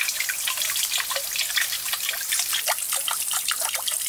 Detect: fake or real real